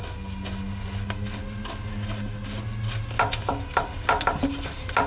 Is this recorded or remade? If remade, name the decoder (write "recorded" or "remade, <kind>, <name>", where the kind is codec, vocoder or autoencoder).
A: recorded